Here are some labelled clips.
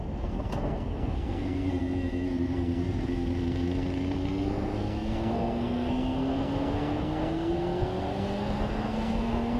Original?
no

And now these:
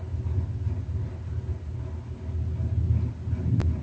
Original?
yes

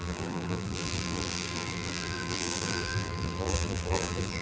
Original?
no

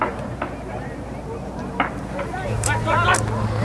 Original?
yes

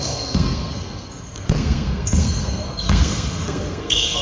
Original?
no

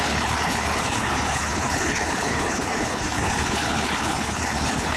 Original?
no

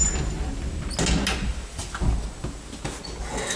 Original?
yes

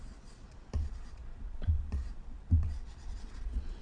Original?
no